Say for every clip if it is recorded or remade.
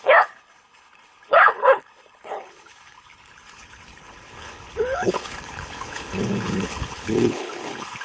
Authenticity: remade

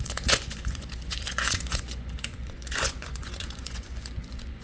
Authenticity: remade